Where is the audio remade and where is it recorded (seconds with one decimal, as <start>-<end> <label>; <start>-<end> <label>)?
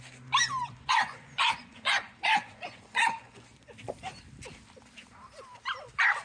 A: 0.0-0.6 recorded; 0.6-3.7 remade; 3.7-6.2 recorded